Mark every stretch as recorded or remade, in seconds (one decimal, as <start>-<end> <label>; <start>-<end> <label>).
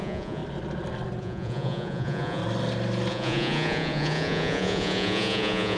0.0-0.4 remade; 0.4-1.2 recorded; 1.2-2.4 remade; 2.4-3.1 recorded; 3.1-5.8 remade